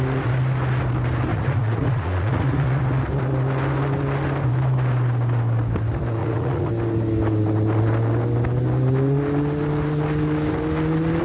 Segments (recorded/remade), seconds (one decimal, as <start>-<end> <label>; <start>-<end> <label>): 0.0-1.3 recorded; 1.3-2.8 remade; 2.8-6.2 recorded; 6.2-6.7 remade; 6.7-11.2 recorded